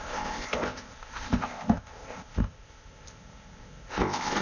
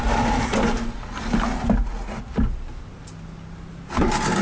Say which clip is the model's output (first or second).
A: first